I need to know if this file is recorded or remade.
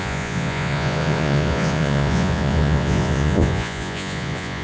remade